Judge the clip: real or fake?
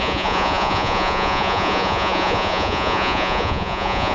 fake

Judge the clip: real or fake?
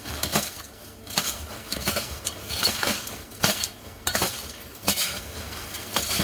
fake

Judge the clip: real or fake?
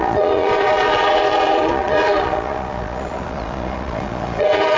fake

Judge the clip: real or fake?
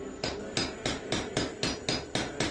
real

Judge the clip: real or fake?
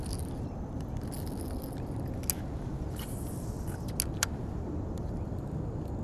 real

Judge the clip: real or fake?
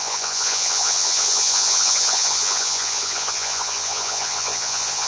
fake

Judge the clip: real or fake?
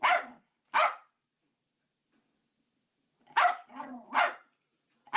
real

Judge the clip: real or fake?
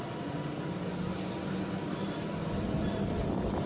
real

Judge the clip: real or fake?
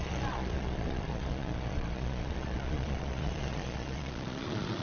fake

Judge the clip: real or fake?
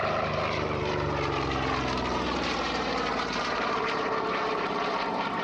fake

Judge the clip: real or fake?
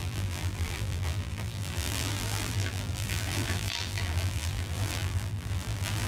fake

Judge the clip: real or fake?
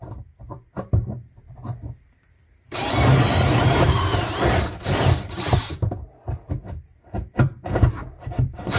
fake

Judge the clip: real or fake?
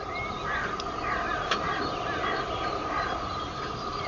real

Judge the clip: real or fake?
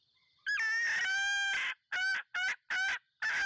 real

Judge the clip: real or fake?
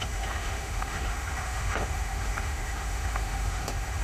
fake